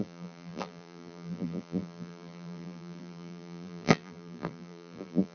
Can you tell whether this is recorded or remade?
remade